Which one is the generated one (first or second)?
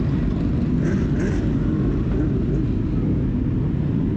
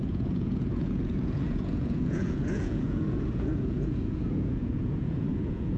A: second